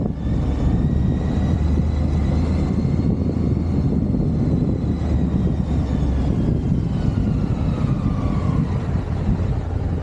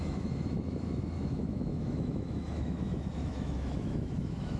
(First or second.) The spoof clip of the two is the second